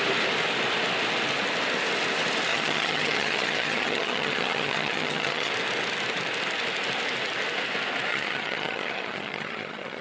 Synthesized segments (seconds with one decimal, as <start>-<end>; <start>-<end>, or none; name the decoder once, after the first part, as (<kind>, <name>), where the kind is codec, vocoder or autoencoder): 2.5-5.5 (vocoder, HiFi-GAN); 8.1-10.0